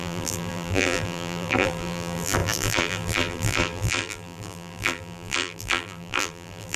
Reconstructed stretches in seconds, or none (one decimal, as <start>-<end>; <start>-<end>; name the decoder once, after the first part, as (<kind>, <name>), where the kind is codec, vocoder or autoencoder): 0.0-6.8 (vocoder, BigVGAN v2)